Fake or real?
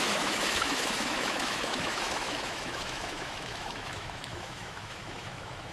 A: fake